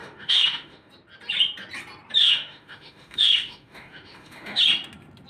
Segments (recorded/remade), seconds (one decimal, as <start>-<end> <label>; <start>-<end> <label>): 0.0-0.9 remade; 0.9-2.2 recorded; 2.2-4.6 remade; 4.6-5.3 recorded